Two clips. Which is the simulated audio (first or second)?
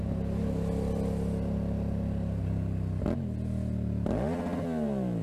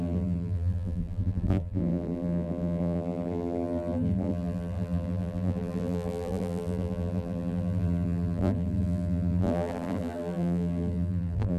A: second